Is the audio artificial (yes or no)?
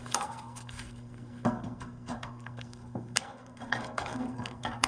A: yes